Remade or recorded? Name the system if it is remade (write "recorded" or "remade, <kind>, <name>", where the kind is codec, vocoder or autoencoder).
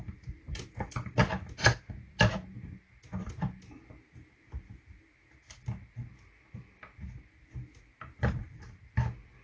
recorded